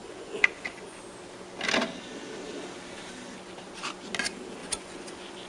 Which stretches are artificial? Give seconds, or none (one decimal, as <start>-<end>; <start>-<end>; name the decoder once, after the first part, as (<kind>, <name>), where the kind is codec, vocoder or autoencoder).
0.0-1.0 (vocoder, Vocos); 4.6-5.5